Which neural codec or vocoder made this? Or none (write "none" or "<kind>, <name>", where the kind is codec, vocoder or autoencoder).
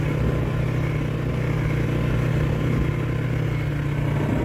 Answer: none